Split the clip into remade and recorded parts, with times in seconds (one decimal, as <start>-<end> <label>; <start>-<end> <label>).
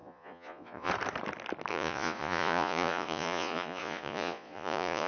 0.0-0.9 remade; 0.9-1.7 recorded; 1.7-5.1 remade